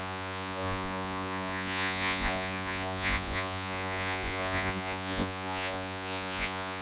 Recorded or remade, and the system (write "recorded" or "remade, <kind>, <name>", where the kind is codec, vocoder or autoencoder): remade, vocoder, Vocos